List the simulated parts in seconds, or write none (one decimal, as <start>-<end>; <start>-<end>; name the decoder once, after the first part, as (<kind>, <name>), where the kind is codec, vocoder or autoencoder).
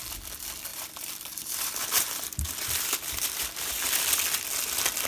0.7-3.8 (vocoder, BigVGAN v2)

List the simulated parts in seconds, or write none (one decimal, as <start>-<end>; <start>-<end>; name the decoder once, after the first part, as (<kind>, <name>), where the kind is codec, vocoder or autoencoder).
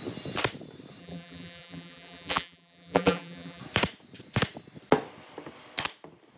1.0-3.6 (vocoder, BigVGAN v2)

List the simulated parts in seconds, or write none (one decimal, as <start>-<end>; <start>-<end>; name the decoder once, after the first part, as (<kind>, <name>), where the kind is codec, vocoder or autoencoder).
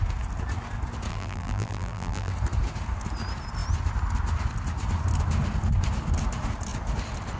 1.1-2.3 (vocoder, BigVGAN v2)